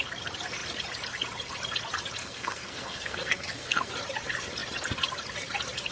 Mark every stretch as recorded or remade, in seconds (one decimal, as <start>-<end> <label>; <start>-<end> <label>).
0.0-2.2 recorded; 2.2-3.9 remade; 3.9-5.9 recorded